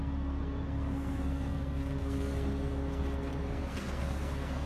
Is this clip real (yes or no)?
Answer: no